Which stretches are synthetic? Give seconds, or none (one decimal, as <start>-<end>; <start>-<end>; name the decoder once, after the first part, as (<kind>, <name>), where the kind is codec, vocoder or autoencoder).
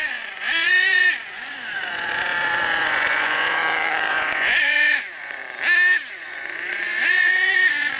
0.0-3.6 (vocoder, Vocos); 4.1-5.4; 6.1-8.0